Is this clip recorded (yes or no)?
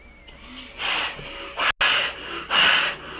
yes